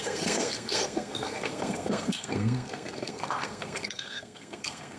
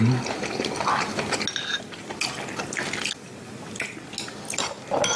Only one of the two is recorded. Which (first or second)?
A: second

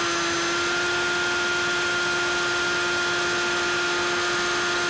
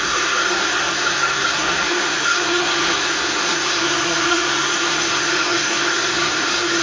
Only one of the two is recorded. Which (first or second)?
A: first